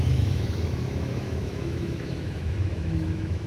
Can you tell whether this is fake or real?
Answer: fake